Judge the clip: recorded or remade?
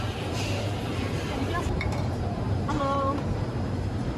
remade